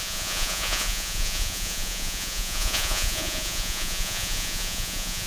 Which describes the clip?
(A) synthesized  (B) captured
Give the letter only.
A